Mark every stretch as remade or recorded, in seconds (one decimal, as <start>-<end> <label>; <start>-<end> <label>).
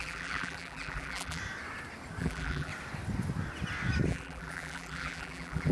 0.0-1.4 remade; 1.4-2.2 recorded; 2.2-2.7 remade; 2.7-4.1 recorded; 4.1-5.7 remade